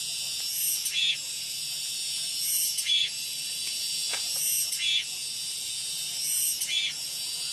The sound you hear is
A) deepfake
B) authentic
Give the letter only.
A